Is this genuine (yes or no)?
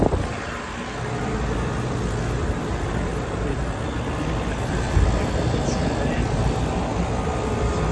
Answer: yes